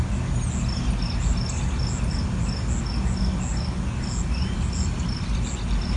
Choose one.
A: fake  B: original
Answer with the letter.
B